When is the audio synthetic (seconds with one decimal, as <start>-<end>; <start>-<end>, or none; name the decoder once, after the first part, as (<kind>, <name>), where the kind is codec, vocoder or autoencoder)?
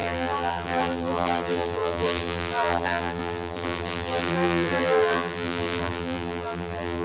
0.0-7.0 (vocoder, BigVGAN v2)